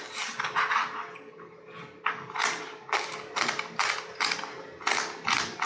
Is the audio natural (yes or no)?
yes